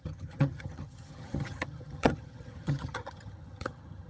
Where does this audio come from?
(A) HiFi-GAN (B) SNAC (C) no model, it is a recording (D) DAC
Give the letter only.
A